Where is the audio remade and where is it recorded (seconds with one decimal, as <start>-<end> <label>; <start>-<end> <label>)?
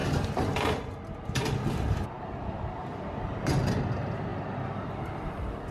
0.0-0.9 remade; 0.9-2.8 recorded; 2.8-3.4 remade; 3.4-5.7 recorded